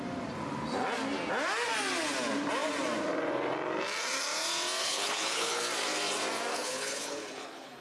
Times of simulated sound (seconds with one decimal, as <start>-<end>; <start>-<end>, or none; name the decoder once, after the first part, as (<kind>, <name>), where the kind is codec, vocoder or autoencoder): 4.8-5.6 (codec, HILCodec); 6.5-7.8